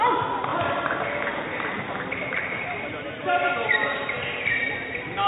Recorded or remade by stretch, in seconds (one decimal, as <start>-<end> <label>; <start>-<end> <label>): 0.0-0.5 recorded; 0.5-2.9 remade; 2.9-3.8 recorded; 3.8-5.3 remade